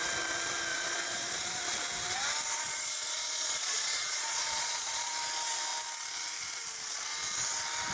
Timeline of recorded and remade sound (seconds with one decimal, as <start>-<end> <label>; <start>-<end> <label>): 0.0-0.7 recorded; 0.7-1.6 remade; 1.6-2.5 recorded; 2.5-5.1 remade; 5.1-7.9 recorded